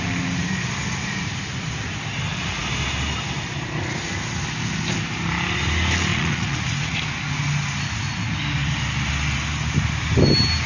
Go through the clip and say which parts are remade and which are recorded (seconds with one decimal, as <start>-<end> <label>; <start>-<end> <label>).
0.0-6.1 recorded; 6.1-7.0 remade; 7.0-10.7 recorded

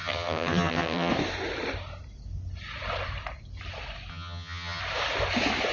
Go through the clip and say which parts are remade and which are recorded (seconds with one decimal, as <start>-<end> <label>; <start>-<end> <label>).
0.0-1.1 remade; 1.1-4.1 recorded; 4.1-4.8 remade; 4.8-5.7 recorded

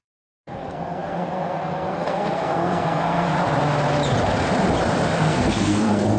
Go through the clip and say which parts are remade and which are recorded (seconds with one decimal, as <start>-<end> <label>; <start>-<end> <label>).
0.0-3.3 remade; 3.3-5.2 recorded; 5.2-6.2 remade